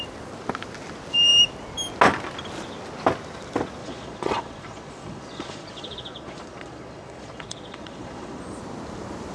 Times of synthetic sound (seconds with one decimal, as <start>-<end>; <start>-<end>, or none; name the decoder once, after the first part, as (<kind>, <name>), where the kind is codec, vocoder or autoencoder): 3.8-8.4 (vocoder, Vocos)